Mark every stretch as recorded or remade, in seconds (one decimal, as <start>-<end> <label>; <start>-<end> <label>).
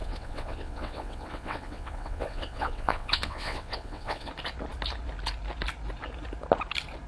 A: 0.0-4.3 remade; 4.3-7.1 recorded